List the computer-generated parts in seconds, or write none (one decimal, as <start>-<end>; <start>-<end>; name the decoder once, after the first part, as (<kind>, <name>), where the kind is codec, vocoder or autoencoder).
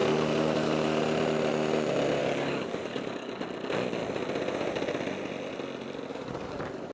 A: 2.2-3.4 (codec, DAC); 6.1-6.9